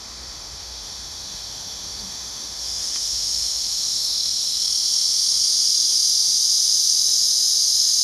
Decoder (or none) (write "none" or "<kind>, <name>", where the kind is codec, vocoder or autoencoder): autoencoder, DAC-VAE